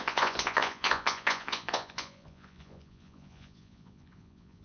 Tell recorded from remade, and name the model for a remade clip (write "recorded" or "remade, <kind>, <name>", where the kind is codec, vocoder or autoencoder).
remade, vocoder, Vocos